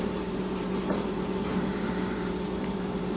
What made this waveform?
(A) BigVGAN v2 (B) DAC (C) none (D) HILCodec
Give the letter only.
A